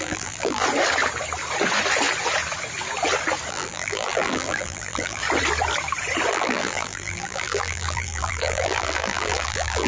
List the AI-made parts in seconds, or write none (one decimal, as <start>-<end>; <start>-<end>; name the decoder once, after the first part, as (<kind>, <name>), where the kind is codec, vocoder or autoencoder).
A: 0.0-0.6 (vocoder, BigVGAN v2); 3.5-5.2; 6.3-9.9